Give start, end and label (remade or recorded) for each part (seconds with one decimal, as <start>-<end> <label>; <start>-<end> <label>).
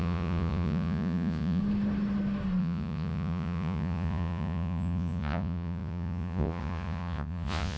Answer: 0.0-1.6 remade; 1.6-2.6 recorded; 2.6-7.8 remade